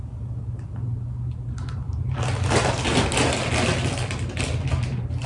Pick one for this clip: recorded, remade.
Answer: recorded